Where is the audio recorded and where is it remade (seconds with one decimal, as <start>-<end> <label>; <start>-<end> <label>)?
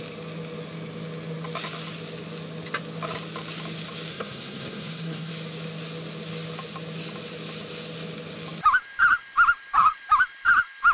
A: 0.0-4.1 recorded; 4.1-5.3 remade; 5.3-10.9 recorded